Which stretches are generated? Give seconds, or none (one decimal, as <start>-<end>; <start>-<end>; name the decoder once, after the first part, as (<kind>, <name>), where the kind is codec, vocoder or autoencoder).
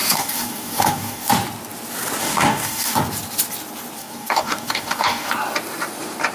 0.0-1.3 (codec, DAC); 2.2-3.0; 4.0-5.3